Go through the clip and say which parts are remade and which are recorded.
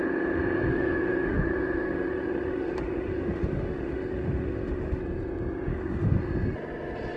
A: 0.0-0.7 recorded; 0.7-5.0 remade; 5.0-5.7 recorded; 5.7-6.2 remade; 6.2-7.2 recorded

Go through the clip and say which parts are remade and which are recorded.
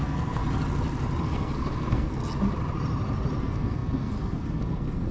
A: 0.0-0.4 remade; 0.4-1.2 recorded; 1.2-2.2 remade; 2.2-3.4 recorded; 3.4-5.1 remade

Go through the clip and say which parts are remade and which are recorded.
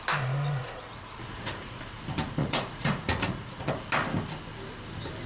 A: 0.0-0.6 recorded; 0.6-1.8 remade; 1.8-2.4 recorded; 2.4-3.7 remade; 3.7-5.3 recorded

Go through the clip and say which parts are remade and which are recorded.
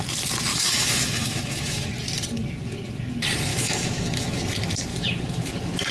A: 0.0-0.5 recorded; 0.5-1.9 remade; 1.9-3.5 recorded; 3.5-4.4 remade; 4.4-4.9 recorded; 4.9-5.5 remade; 5.5-5.9 recorded